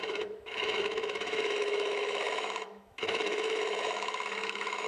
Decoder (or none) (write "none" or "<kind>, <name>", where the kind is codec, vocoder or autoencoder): autoencoder, DAC-VAE